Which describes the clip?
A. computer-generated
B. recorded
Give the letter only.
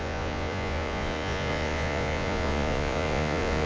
A